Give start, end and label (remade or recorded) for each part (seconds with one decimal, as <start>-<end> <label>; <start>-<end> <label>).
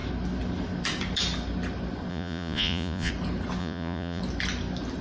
0.0-2.1 recorded; 2.1-3.1 remade; 3.1-3.6 recorded; 3.6-4.2 remade; 4.2-5.0 recorded